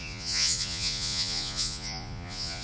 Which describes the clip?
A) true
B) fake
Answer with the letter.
B